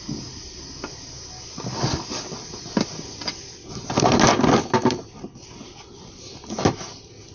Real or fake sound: real